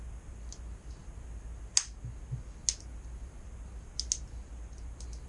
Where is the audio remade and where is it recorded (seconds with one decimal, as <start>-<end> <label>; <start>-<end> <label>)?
0.0-5.3 recorded